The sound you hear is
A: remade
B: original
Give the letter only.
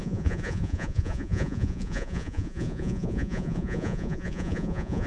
A